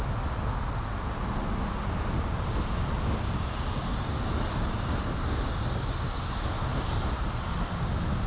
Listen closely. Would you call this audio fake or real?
real